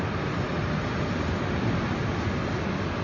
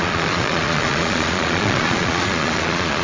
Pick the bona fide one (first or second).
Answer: first